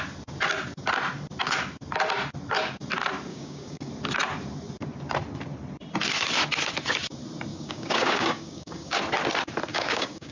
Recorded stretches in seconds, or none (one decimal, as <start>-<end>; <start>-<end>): 0.0-3.3; 3.9-7.5; 9.0-9.7